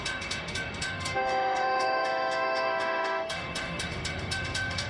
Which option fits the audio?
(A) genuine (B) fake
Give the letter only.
B